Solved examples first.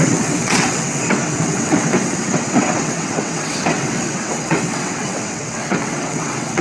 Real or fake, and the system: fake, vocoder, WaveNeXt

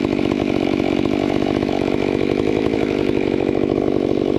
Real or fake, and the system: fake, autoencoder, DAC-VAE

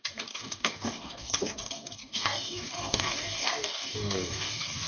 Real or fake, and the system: fake, codec, DAC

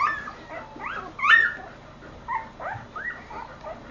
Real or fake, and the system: real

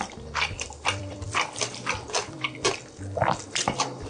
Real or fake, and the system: fake, vocoder, BigVGAN v2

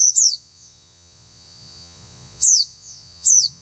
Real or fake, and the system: fake, vocoder, Vocos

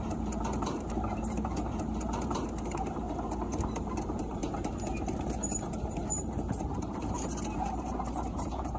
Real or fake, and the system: fake, vocoder, BigVGAN v2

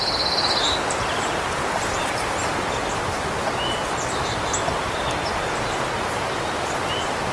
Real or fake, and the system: real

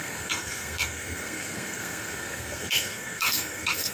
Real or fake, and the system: fake, codec, SNAC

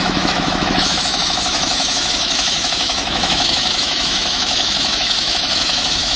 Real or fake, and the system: fake, autoencoder, DAC-VAE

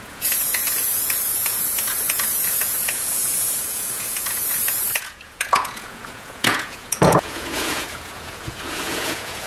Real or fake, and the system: fake, vocoder, Vocos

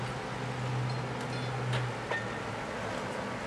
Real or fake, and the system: real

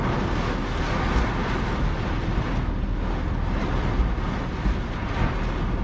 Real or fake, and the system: real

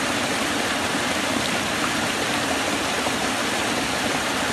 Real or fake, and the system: real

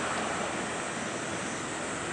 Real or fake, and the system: real